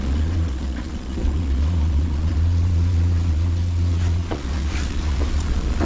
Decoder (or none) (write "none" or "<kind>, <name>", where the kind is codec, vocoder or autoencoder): vocoder, Vocos